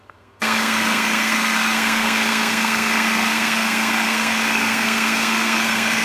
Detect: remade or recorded remade